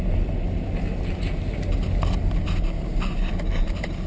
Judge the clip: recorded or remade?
recorded